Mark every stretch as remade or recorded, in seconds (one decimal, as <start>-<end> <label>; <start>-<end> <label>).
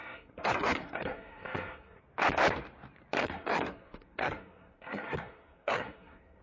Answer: 0.0-2.0 remade; 2.0-3.2 recorded; 3.2-6.4 remade